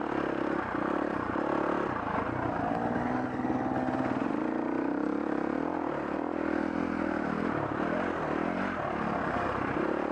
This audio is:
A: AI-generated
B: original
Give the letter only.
B